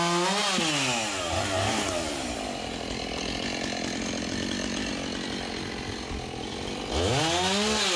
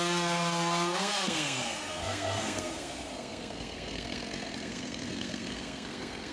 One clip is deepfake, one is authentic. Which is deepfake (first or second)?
second